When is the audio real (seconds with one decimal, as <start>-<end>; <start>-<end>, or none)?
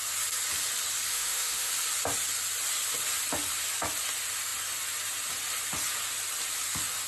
0.0-1.1; 1.7-7.1